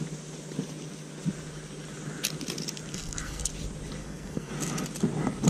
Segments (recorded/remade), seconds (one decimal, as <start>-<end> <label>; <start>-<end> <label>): 0.0-2.9 recorded; 2.9-3.5 remade; 3.5-4.0 recorded; 4.0-4.5 remade; 4.5-5.5 recorded